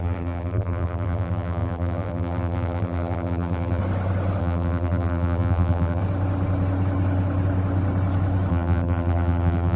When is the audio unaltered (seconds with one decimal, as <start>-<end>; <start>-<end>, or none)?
3.8-4.4; 6.0-8.5